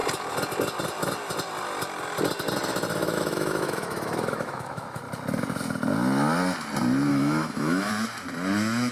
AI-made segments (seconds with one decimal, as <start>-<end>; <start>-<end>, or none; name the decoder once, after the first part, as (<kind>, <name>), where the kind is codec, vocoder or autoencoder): 3.0-5.0 (autoencoder, DAC-VAE); 7.1-7.9